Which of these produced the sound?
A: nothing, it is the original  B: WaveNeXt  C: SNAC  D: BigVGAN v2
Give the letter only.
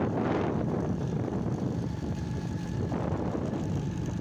A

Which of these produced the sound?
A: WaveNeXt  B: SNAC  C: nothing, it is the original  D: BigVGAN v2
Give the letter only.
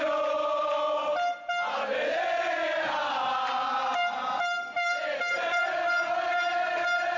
C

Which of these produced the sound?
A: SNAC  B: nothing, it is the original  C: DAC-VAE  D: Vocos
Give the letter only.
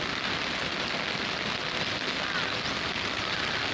B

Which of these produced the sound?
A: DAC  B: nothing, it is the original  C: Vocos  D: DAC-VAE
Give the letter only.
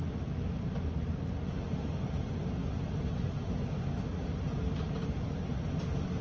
B